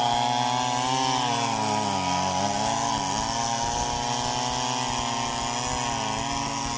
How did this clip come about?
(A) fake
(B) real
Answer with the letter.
B